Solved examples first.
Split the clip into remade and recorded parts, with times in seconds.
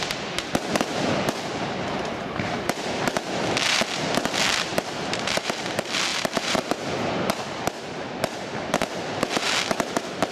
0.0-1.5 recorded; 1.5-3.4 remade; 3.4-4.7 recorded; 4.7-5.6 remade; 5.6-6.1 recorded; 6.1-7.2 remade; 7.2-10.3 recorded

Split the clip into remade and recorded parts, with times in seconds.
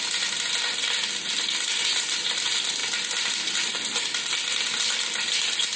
0.0-5.8 recorded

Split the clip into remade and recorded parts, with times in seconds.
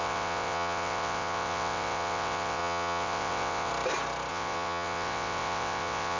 0.0-3.7 remade; 3.7-4.3 recorded; 4.3-6.2 remade